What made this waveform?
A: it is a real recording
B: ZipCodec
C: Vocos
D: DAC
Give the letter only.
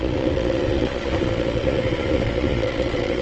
C